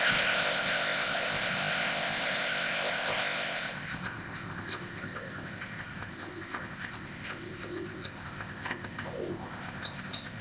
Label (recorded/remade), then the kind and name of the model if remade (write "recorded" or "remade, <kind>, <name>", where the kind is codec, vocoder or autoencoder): remade, codec, ZipCodec